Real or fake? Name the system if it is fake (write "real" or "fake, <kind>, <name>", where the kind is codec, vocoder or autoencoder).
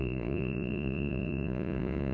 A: fake, vocoder, Vocos